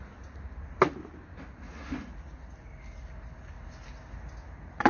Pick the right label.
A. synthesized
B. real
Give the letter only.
B